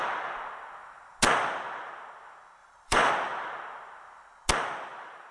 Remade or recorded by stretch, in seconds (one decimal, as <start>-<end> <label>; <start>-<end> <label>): 0.0-0.5 remade; 0.5-2.6 recorded; 2.6-3.1 remade; 3.1-5.3 recorded